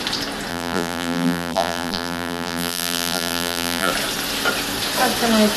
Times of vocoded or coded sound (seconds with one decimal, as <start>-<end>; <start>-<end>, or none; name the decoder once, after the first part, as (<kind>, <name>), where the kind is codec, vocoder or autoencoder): 0.5-3.9 (vocoder, BigVGAN v2)